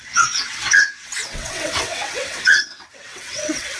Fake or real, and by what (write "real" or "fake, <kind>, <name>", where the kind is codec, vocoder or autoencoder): fake, vocoder, WaveNeXt